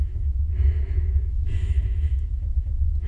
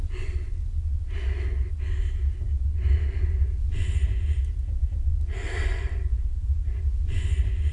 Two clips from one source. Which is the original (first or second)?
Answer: second